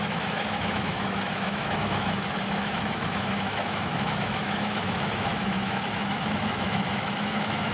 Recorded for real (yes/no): no